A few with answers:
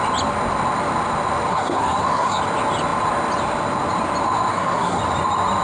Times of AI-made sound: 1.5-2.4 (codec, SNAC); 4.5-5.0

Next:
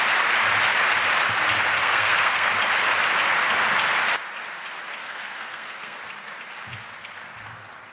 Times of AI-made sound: 1.8-2.5 (codec, SNAC); 5.0-6.0